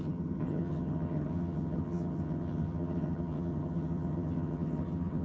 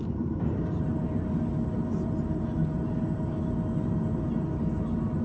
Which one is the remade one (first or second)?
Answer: first